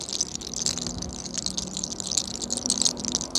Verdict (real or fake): real